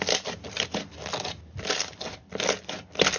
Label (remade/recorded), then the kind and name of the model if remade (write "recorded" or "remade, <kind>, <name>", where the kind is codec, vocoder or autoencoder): recorded